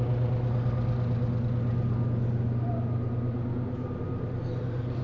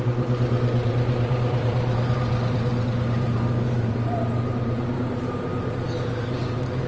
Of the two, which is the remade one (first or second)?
second